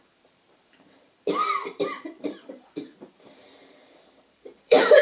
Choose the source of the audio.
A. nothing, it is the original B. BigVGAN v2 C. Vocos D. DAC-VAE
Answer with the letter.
B